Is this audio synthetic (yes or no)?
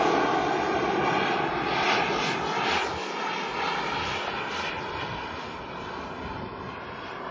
no